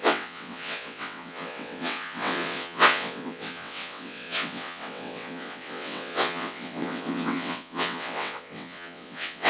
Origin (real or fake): fake